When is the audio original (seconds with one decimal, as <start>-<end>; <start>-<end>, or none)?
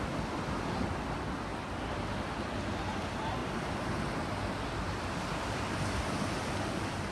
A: 0.0-7.1